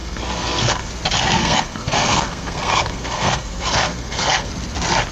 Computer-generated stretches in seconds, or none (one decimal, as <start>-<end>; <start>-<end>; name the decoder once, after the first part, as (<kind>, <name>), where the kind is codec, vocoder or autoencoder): 0.0-0.9 (codec, SNAC); 1.4-4.5